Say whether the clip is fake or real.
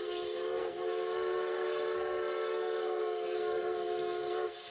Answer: fake